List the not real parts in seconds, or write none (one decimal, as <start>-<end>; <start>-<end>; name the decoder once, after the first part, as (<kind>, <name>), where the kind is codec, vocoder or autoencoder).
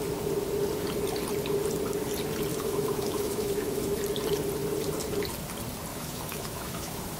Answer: 2.5-4.0 (autoencoder, DAC-VAE); 5.9-7.2